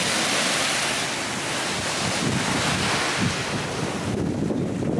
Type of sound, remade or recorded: recorded